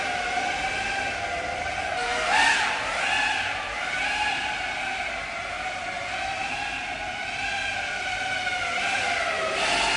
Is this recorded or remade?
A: recorded